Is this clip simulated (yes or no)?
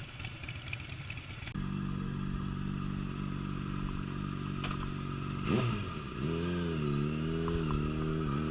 no